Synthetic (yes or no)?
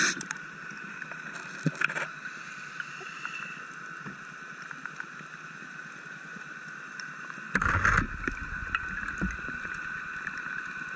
no